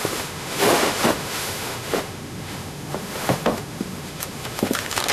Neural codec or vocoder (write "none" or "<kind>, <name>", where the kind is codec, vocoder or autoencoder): autoencoder, DAC-VAE